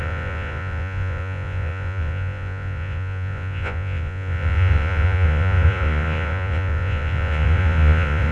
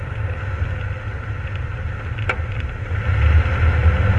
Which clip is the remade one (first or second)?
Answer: first